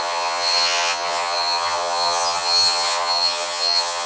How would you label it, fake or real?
fake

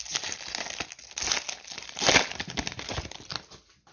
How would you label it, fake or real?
real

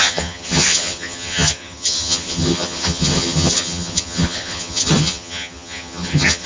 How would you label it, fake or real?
fake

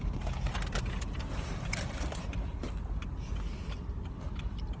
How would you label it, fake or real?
real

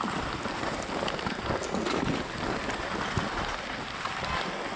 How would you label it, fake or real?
real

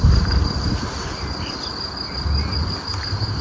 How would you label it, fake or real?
real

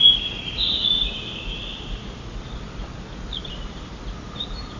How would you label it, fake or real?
real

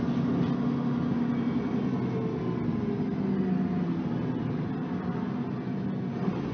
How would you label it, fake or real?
real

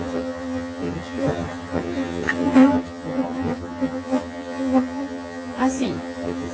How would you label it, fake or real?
fake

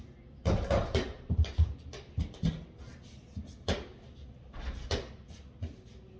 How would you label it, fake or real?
real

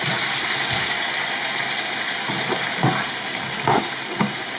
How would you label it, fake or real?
real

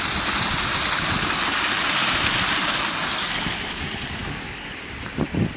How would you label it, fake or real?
real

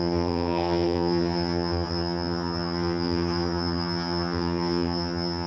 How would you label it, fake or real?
fake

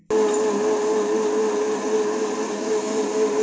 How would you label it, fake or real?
real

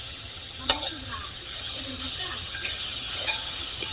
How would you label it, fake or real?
fake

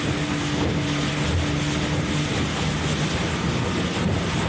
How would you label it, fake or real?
real